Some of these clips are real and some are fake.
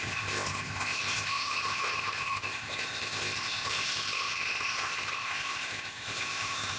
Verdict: fake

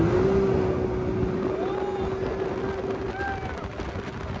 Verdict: real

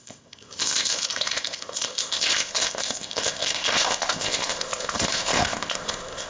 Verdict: fake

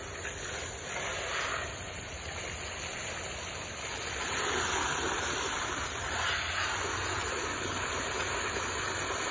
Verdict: real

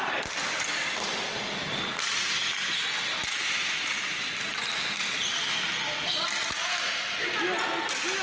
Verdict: real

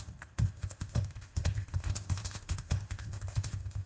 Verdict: fake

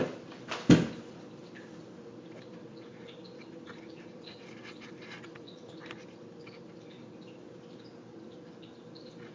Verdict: real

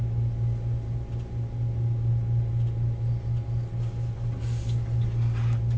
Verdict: real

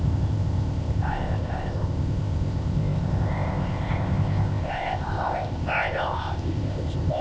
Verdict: fake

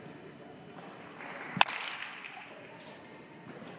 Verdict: real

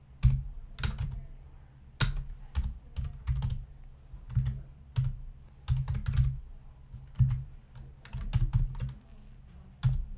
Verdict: real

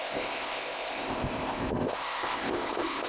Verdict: fake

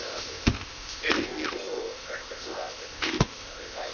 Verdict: fake